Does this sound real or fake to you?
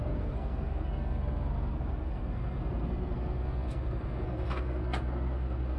fake